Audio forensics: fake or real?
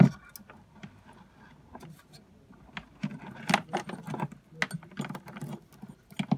real